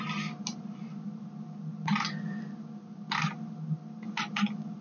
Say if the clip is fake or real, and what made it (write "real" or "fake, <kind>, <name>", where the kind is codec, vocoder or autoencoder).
real